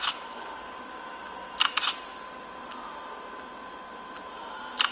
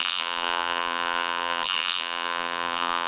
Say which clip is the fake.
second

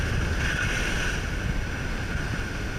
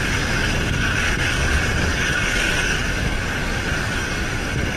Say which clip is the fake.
second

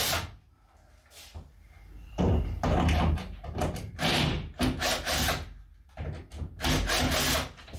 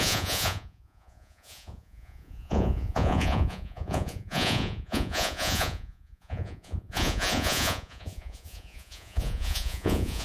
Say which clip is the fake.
second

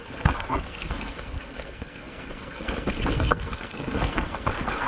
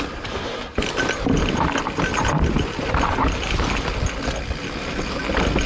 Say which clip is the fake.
first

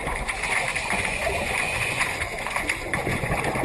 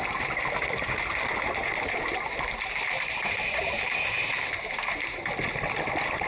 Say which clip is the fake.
first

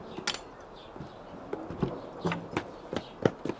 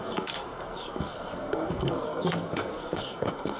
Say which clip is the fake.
second